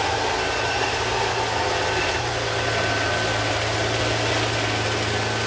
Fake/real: real